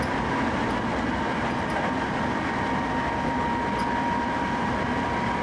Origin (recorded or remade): recorded